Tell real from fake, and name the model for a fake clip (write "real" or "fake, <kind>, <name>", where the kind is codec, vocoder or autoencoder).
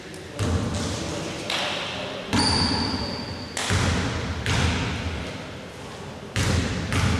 real